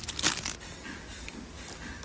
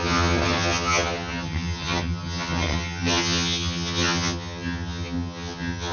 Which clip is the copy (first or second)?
second